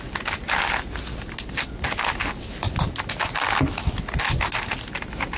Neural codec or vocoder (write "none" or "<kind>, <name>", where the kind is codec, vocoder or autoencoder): none